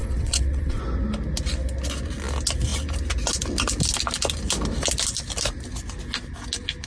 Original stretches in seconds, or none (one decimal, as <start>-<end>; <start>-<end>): 0.8-6.9